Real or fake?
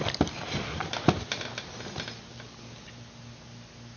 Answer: real